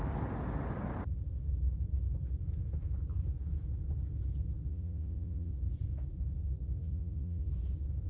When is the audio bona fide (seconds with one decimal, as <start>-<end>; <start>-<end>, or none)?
0.0-4.7; 5.5-6.8; 7.5-8.1